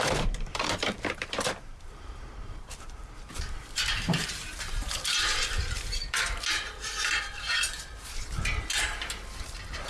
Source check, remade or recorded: remade